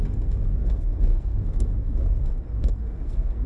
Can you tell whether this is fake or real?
fake